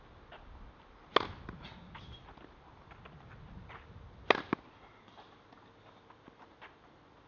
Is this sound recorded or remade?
recorded